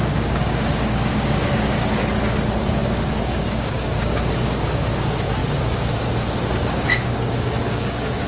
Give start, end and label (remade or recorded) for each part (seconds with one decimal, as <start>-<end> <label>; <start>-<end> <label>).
0.0-2.0 remade; 2.0-2.7 recorded; 2.7-8.3 remade